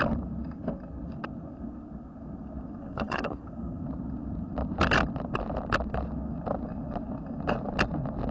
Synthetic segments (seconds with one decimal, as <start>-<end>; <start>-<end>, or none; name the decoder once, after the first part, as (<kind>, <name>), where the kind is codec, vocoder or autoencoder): 2.8-3.8 (codec, SNAC)